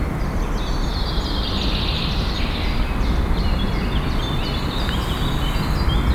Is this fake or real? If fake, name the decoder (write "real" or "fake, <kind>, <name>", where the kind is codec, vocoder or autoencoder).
real